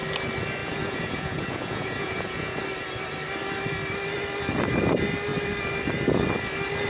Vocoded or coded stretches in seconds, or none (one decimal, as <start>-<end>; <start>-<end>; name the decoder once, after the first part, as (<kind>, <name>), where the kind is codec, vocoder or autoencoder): 0.6-2.6 (vocoder, Vocos)